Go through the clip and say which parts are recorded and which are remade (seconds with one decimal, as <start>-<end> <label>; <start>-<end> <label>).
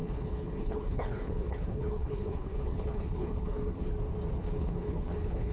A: 0.0-3.9 remade; 3.9-4.4 recorded; 4.4-5.5 remade